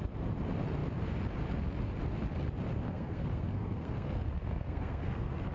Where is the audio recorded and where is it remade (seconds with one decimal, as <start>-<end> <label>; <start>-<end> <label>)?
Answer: 0.0-2.8 recorded; 2.8-5.5 remade